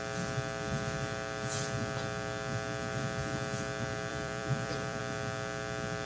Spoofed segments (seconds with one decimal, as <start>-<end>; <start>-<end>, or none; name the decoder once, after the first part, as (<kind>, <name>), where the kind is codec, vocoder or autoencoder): 4.1-5.0 (vocoder, BigVGAN v2)

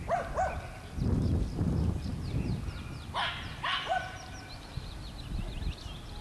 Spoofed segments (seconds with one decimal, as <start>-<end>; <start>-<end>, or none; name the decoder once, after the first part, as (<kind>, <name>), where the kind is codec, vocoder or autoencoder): none